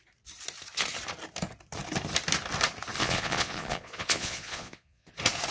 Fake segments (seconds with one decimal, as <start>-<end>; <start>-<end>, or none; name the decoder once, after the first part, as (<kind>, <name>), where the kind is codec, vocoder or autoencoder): 3.0-5.1 (vocoder, Vocos)